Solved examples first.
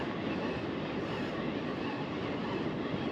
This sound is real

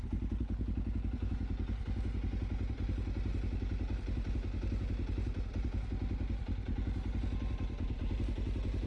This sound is real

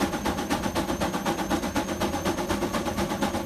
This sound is real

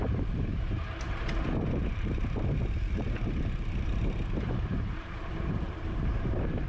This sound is fake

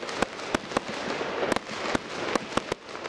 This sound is real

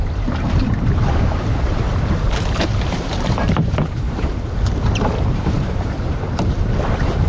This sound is fake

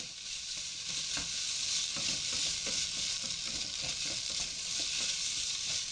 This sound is fake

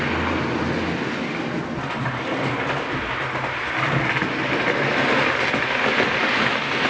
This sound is real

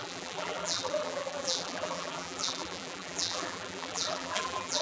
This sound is fake